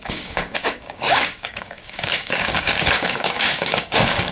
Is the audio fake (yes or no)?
yes